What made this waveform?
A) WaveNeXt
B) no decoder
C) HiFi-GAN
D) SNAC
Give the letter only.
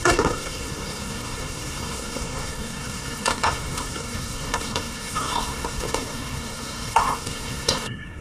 D